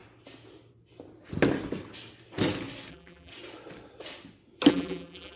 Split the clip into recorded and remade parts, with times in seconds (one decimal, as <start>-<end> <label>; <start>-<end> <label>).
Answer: 0.0-2.9 recorded; 2.9-3.3 remade; 3.3-4.7 recorded; 4.7-5.4 remade